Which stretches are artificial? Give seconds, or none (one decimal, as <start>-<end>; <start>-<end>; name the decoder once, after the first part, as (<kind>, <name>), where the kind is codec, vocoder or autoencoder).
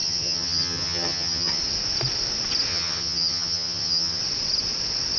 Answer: 0.0-1.6 (vocoder, HiFi-GAN); 2.7-4.2